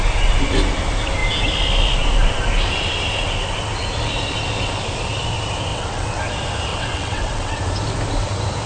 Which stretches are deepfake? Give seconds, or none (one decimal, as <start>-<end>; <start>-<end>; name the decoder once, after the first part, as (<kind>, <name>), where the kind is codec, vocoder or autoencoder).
5.7-6.2 (vocoder, WaveNeXt); 6.7-7.6